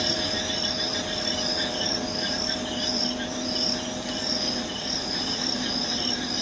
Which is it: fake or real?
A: fake